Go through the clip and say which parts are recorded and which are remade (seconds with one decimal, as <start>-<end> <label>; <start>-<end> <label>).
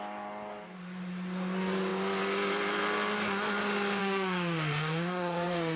0.0-4.0 recorded; 4.0-5.8 remade